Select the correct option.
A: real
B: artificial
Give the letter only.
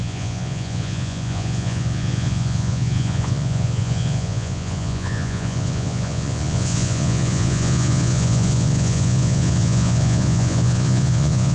B